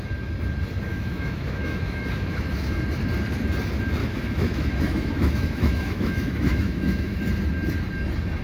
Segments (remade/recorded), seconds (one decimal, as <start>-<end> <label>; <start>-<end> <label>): 0.0-0.9 recorded; 0.9-2.8 remade; 2.8-4.0 recorded; 4.0-7.2 remade; 7.2-8.4 recorded